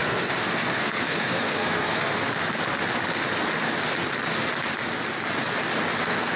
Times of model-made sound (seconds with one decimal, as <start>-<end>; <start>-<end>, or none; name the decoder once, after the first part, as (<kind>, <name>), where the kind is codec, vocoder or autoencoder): 0.0-2.2 (codec, SNAC); 6.0-6.4